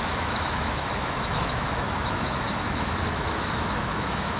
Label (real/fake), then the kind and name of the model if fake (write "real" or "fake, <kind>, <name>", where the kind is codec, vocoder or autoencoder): fake, autoencoder, DAC-VAE